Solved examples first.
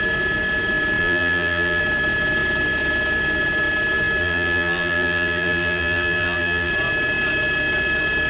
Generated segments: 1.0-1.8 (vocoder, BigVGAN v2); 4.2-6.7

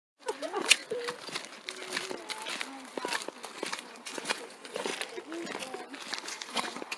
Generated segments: 0.0-0.8 (vocoder, Vocos); 3.7-4.9; 6.2-7.0